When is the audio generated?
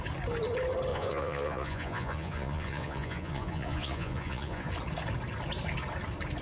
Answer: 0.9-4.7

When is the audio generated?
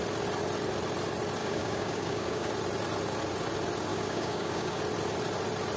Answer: 1.4-2.5; 3.9-4.8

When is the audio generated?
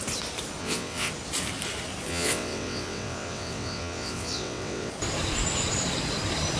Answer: 0.6-1.1; 2.1-4.9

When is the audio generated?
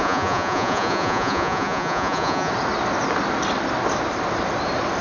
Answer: 0.0-2.5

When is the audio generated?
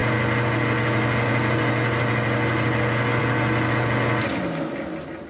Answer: none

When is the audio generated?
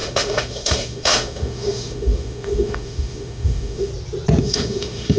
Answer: 0.0-3.9; 4.4-5.2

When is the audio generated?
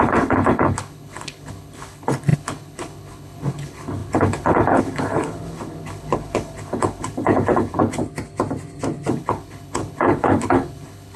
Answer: 0.0-8.0; 9.1-11.2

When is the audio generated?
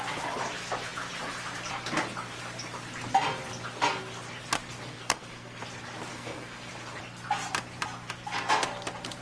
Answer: 4.9-5.6; 6.1-6.7